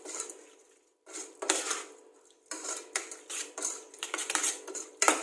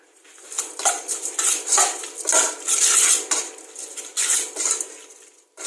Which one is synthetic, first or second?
first